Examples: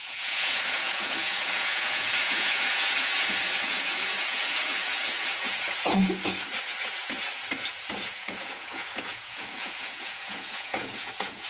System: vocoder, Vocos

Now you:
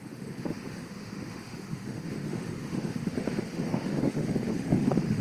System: autoencoder, DAC-VAE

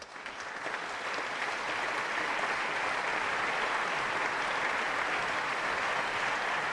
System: none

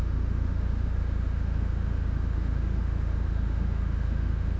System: autoencoder, DAC-VAE